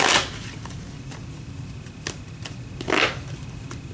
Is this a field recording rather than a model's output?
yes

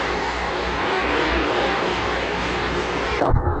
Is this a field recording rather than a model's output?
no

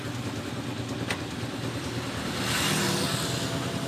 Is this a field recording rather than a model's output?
yes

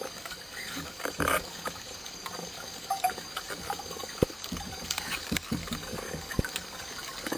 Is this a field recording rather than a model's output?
no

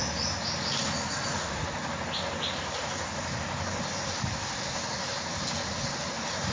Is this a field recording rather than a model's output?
yes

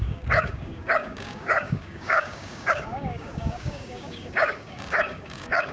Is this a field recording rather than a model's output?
no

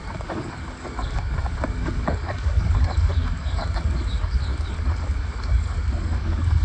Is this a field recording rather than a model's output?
no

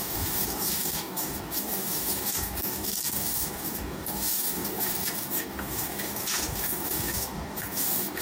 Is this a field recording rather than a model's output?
no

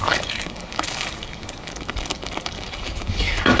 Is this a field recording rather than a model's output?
no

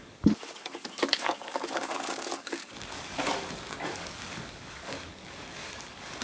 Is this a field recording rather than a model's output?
no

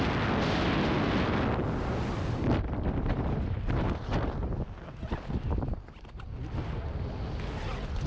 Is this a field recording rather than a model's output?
yes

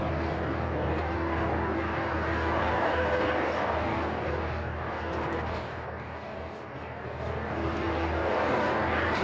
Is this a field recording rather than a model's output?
no